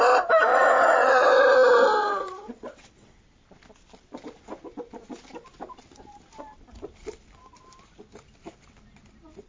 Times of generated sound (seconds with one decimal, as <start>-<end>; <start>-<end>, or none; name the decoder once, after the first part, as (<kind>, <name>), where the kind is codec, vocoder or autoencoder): 0.5-1.3 (vocoder, WaveNeXt); 2.0-3.2